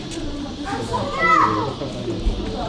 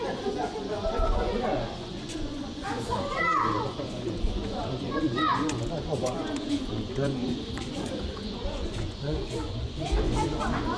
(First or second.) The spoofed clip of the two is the second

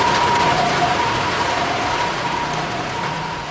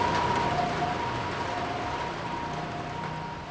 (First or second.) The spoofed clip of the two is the first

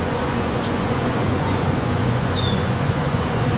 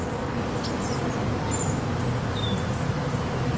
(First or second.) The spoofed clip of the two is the first